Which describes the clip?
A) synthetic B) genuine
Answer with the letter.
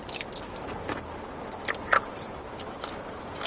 B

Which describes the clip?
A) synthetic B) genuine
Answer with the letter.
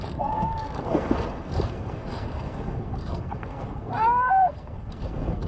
A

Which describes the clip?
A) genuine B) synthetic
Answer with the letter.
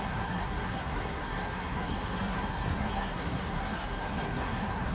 B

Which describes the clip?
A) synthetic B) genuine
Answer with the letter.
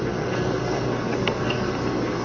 A